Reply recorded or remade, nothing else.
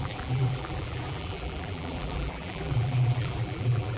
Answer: remade